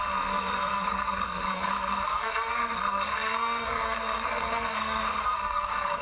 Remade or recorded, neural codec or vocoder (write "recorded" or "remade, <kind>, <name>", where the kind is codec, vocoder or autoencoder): remade, codec, SNAC